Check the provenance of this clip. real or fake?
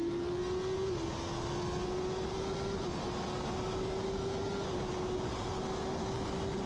real